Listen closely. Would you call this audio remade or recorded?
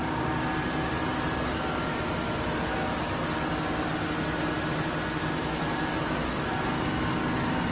recorded